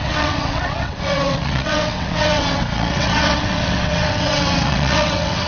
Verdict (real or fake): fake